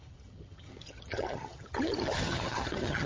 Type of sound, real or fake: fake